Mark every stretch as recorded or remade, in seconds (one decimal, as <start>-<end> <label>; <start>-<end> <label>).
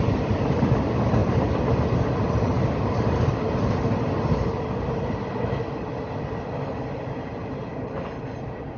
0.0-8.8 recorded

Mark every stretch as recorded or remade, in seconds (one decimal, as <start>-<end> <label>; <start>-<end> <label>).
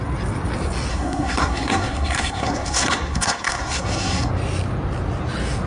0.0-0.9 recorded; 0.9-4.3 remade; 4.3-5.7 recorded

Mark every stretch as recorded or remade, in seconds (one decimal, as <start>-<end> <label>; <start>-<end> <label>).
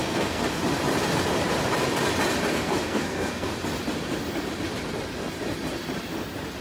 0.0-0.6 remade; 0.6-2.5 recorded; 2.5-3.5 remade; 3.5-6.6 recorded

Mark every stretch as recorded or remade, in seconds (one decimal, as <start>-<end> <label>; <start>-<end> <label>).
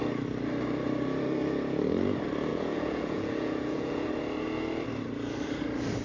0.0-2.5 recorded; 2.5-4.1 remade; 4.1-6.0 recorded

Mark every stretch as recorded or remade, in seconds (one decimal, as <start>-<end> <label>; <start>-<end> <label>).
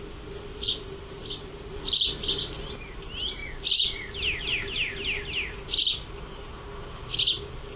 0.0-7.8 recorded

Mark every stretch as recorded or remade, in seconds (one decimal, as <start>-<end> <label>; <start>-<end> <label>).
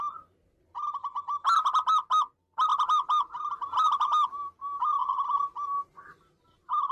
0.0-6.9 recorded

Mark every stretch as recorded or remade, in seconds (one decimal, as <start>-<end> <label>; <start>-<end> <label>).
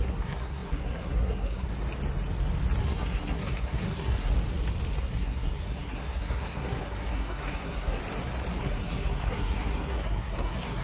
0.0-1.7 remade; 1.7-2.8 recorded; 2.8-4.3 remade; 4.3-5.0 recorded; 5.0-8.0 remade; 8.0-8.6 recorded; 8.6-10.8 remade